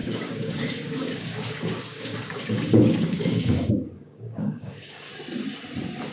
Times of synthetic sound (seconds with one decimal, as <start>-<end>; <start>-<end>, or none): 0.0-5.1